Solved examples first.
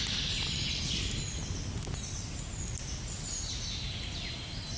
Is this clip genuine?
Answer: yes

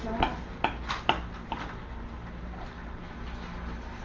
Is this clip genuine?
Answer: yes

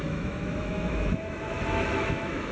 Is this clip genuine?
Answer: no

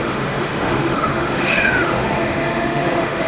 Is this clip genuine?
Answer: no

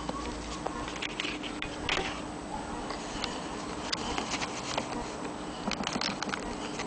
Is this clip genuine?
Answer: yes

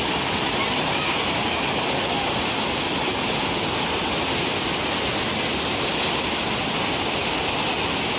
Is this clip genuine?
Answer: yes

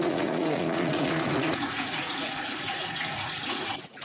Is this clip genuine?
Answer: no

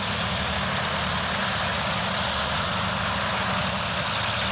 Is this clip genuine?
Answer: yes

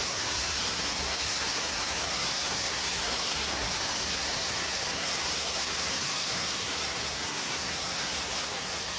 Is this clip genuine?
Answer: no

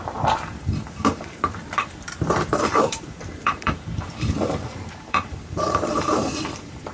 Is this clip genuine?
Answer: no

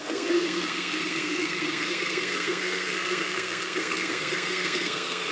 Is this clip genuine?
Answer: no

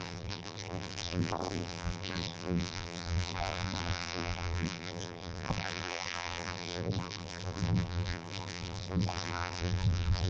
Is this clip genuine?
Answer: no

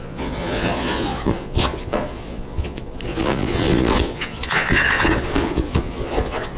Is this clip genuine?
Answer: no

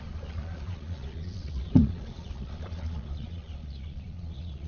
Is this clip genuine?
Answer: no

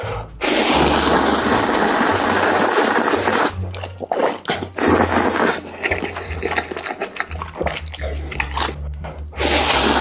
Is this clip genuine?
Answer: yes